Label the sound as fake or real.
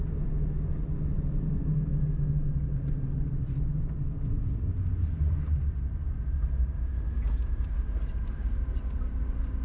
real